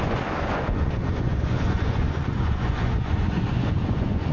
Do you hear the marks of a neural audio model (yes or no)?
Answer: yes